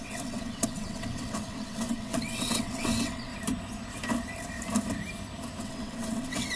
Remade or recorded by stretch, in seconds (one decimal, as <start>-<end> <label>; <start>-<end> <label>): 0.0-3.3 remade; 3.3-5.6 recorded; 5.6-6.6 remade